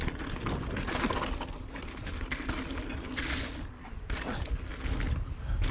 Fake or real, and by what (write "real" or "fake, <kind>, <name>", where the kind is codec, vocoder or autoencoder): real